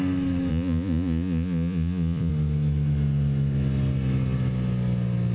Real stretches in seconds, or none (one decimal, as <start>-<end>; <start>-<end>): 0.0-0.5; 2.3-5.3